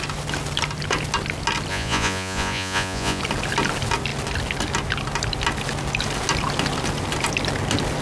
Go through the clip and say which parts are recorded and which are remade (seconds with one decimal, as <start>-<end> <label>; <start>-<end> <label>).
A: 0.0-1.7 recorded; 1.7-3.2 remade; 3.2-8.0 recorded